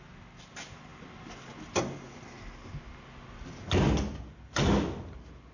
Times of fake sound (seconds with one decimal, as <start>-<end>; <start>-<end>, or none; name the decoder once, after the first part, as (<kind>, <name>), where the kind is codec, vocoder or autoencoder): none